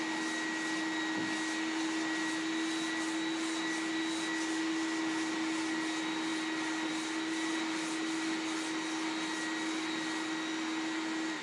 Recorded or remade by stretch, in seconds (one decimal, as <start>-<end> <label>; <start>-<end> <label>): 0.0-11.4 recorded